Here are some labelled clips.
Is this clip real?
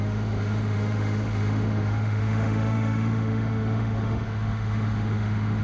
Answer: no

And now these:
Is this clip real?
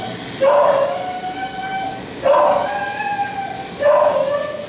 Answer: yes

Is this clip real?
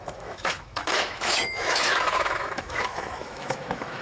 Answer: no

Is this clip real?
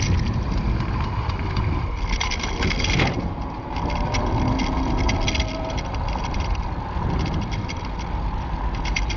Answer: yes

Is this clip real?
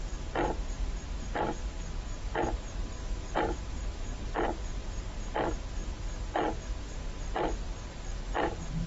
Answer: yes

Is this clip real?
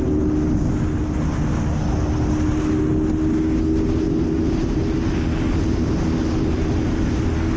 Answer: yes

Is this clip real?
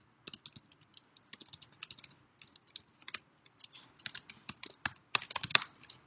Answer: yes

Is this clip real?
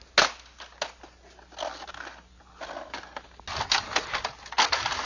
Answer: yes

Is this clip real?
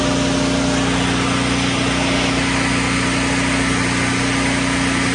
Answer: yes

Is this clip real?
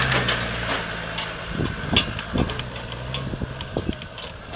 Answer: yes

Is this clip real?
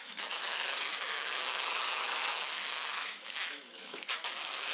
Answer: no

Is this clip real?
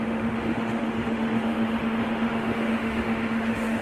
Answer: no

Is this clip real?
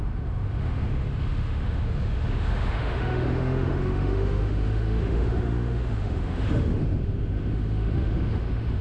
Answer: no